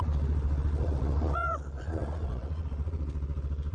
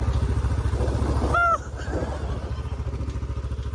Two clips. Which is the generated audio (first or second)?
first